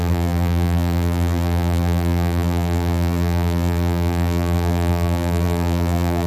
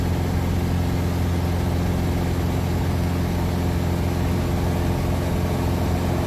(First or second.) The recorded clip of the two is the second